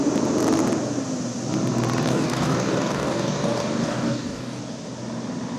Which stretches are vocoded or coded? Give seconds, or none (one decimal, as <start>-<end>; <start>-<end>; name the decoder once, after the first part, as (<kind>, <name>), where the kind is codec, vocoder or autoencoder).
2.1-4.6 (codec, DAC)